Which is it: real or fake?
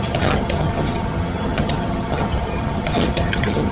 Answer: fake